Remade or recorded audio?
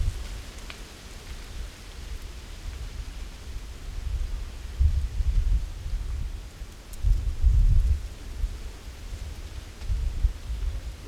recorded